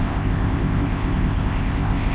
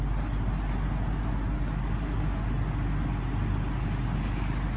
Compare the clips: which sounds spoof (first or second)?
first